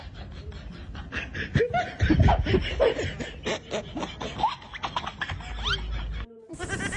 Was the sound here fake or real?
real